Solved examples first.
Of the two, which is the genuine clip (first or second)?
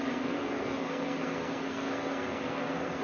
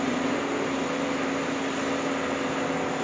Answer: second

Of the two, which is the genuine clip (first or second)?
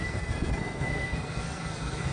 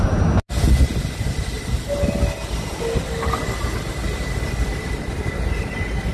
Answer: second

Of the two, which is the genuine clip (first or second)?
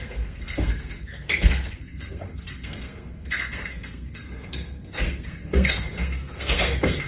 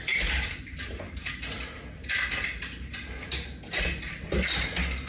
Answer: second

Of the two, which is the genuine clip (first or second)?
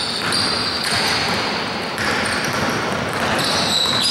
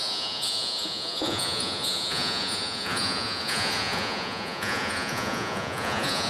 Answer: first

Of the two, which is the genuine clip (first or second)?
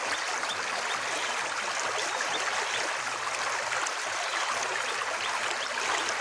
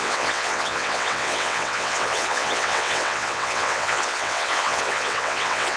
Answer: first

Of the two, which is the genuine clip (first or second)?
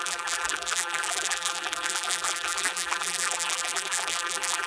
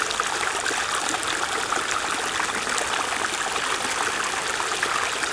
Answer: second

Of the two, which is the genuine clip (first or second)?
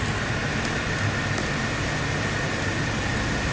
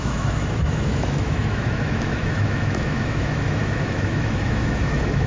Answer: first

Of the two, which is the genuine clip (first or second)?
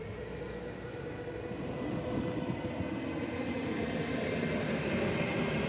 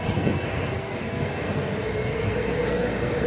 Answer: first